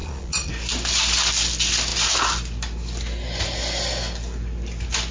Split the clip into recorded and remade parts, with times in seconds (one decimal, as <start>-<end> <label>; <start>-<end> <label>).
0.0-0.5 remade; 0.5-5.1 recorded